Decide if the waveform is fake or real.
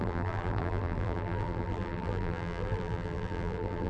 fake